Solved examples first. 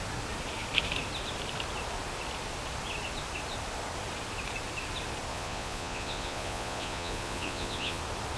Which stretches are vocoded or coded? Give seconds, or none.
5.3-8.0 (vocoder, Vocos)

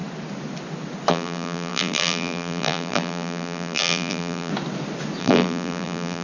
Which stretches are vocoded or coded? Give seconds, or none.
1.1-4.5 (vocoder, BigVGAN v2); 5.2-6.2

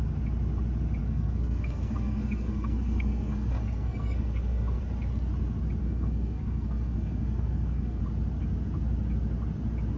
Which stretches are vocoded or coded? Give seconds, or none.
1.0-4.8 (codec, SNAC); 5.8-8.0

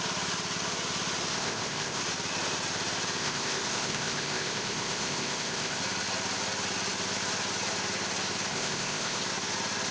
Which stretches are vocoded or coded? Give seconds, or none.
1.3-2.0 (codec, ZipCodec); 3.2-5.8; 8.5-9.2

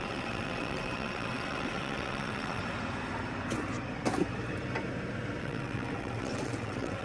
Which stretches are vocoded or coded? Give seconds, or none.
0.0-2.6 (vocoder, WaveNeXt); 5.4-7.0

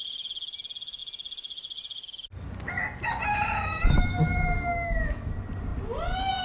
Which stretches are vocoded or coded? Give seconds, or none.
3.3-5.3 (autoencoder, DAC-VAE)

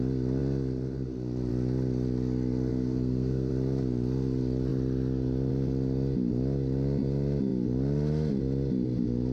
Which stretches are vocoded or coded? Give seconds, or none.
2.7-3.5 (codec, SNAC)

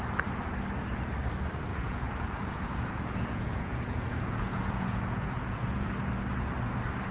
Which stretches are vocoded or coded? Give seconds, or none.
1.7-5.9 (vocoder, Vocos)